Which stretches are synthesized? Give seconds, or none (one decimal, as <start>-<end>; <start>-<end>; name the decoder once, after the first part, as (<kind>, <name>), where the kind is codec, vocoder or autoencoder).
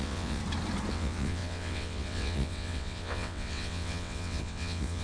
0.0-0.4 (vocoder, WaveNeXt); 0.9-5.0